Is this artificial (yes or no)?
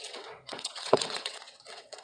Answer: yes